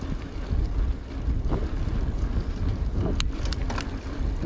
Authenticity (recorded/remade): recorded